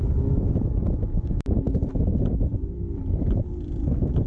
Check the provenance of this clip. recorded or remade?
remade